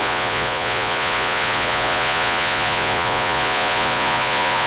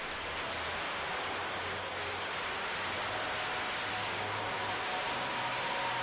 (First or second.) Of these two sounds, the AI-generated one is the first